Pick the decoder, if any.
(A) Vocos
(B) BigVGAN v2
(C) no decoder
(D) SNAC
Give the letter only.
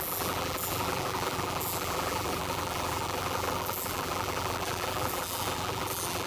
B